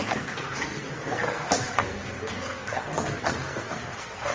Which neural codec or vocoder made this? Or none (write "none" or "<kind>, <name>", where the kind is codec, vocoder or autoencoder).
codec, SNAC